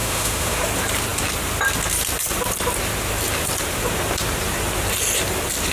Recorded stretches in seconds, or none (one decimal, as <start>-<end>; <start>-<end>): 0.6-5.7